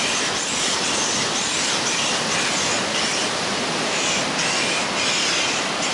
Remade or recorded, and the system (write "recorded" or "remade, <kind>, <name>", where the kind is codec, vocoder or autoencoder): recorded